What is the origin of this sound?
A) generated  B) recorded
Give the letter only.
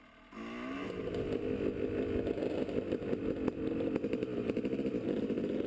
B